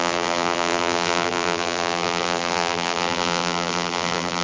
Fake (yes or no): yes